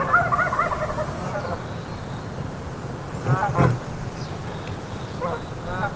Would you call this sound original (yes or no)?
yes